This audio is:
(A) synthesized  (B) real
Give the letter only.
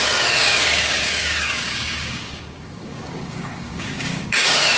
A